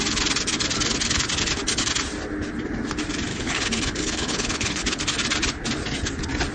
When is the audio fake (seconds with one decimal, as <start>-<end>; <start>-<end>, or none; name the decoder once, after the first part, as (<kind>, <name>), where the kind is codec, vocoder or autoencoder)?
3.3-5.0 (codec, HILCodec)